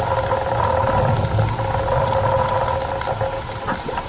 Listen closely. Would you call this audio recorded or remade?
recorded